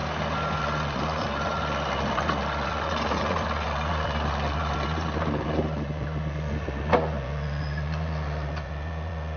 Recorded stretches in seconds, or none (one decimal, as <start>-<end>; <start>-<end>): 0.0-0.6